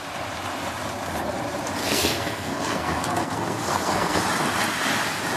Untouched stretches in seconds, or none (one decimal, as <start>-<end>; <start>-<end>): 0.0-1.8; 4.2-5.4